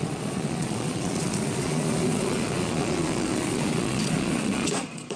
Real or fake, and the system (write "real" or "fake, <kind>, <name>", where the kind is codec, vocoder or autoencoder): fake, vocoder, Vocos